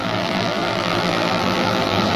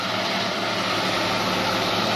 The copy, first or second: first